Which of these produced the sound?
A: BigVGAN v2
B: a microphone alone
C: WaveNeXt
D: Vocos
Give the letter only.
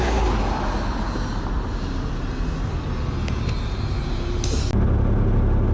B